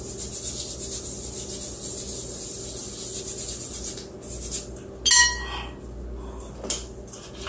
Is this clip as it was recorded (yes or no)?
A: yes